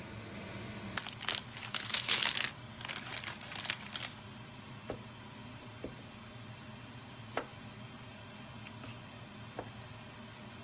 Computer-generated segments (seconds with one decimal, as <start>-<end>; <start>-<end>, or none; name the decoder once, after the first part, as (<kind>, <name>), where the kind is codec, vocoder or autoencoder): 1.6-2.2 (autoencoder, DAC-VAE)